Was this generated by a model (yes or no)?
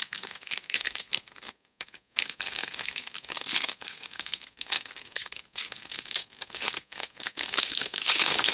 yes